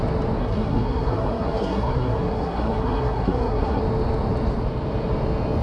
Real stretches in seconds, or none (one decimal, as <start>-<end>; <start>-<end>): 0.0-0.4; 3.8-5.6